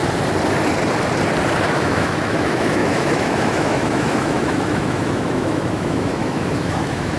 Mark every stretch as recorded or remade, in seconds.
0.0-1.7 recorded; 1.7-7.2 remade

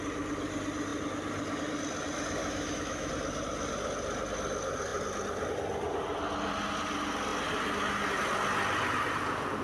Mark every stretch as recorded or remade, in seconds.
0.0-2.4 recorded; 2.4-3.1 remade; 3.1-9.6 recorded

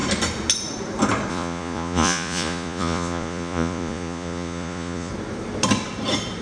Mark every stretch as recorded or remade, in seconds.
0.0-1.3 recorded; 1.3-5.1 remade; 5.1-6.4 recorded

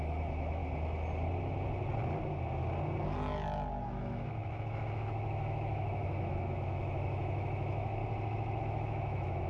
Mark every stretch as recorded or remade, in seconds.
0.0-0.6 remade; 0.6-3.8 recorded; 3.8-8.0 remade; 8.0-8.6 recorded; 8.6-9.5 remade

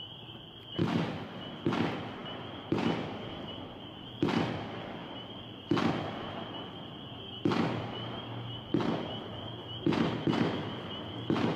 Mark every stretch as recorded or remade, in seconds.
0.0-11.6 recorded